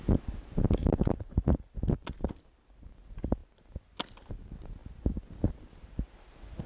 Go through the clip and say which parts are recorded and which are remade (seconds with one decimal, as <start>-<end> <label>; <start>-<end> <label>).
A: 0.0-0.8 recorded; 0.8-1.8 remade; 1.8-6.7 recorded